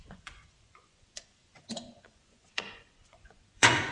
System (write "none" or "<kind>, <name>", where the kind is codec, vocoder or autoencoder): vocoder, Vocos